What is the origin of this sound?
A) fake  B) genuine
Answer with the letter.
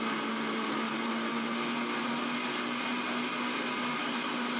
B